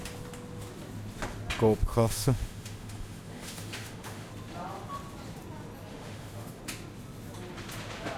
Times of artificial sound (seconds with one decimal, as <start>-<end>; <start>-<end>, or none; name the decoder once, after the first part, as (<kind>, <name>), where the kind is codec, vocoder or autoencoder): 1.9-4.3 (autoencoder, DAC-VAE); 5.9-6.6